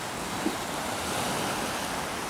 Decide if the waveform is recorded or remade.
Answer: recorded